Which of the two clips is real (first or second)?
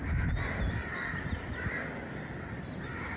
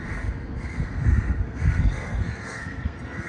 first